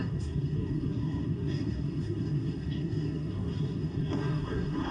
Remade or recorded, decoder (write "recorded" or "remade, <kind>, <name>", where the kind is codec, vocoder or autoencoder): remade, codec, SNAC